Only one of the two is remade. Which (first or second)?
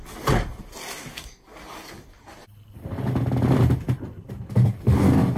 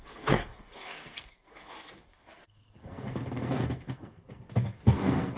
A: second